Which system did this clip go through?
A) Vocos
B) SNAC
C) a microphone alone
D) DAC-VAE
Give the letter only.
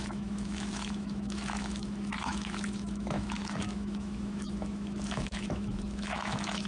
D